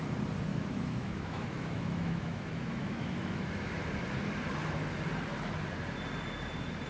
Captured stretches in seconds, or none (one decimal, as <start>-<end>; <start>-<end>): 0.0-0.5; 3.8-6.9